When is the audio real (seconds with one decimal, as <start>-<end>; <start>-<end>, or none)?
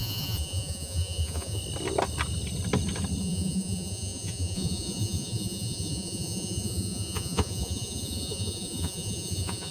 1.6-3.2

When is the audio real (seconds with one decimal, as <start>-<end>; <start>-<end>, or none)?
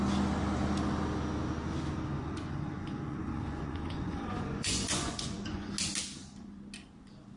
0.0-2.2; 5.7-7.4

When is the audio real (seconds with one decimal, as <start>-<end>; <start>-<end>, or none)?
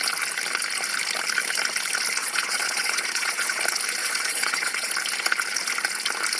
0.0-2.2; 3.6-4.0; 4.9-6.4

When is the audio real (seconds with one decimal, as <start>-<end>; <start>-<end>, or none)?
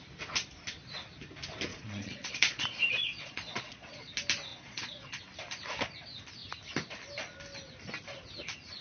0.0-1.7; 4.1-4.5; 5.2-8.8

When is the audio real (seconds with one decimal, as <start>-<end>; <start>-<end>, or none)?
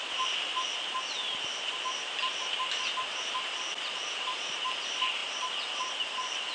0.0-6.5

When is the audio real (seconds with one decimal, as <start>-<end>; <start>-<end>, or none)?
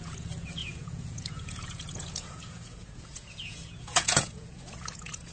none